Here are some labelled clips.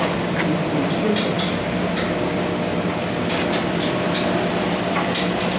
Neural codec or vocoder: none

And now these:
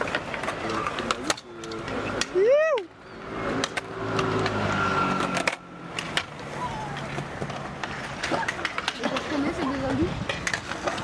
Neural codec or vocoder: none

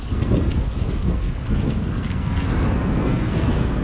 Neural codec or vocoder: codec, SNAC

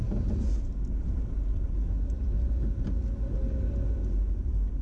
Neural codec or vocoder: none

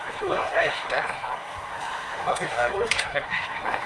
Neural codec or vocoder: codec, SNAC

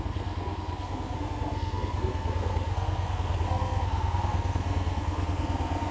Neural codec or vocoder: codec, SNAC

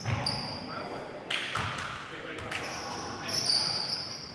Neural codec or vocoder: none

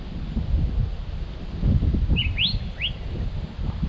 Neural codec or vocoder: none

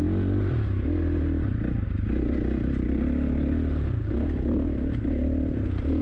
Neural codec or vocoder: none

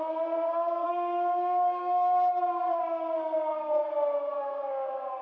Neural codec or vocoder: codec, SNAC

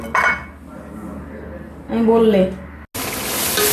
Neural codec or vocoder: none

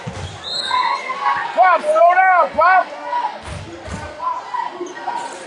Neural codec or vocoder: none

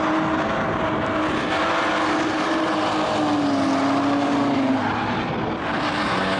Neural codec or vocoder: none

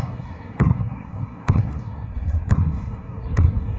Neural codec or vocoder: codec, SNAC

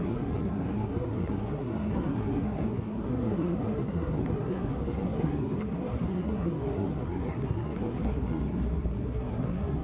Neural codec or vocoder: codec, SNAC